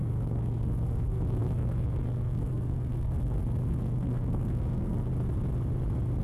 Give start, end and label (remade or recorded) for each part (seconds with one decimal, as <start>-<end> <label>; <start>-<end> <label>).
0.0-5.1 remade; 5.1-6.2 recorded